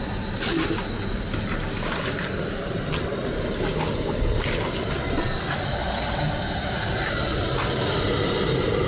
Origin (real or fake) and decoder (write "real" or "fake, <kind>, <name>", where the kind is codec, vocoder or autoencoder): real